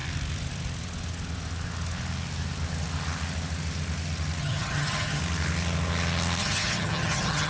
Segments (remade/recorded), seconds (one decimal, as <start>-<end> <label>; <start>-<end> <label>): 0.0-4.4 recorded; 4.4-5.2 remade; 5.2-6.4 recorded; 6.4-7.5 remade